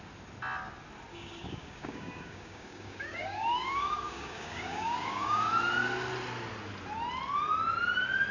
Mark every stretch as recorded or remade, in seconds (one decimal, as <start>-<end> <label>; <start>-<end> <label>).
0.0-1.1 recorded; 1.1-5.5 remade; 5.5-8.3 recorded